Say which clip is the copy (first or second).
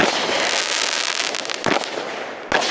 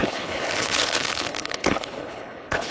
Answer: second